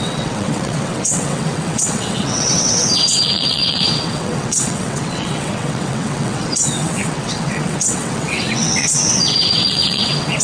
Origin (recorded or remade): remade